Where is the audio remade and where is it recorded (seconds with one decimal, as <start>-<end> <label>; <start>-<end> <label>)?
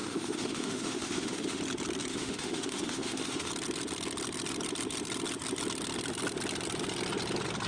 0.0-1.6 remade; 1.6-2.1 recorded; 2.1-3.5 remade; 3.5-7.7 recorded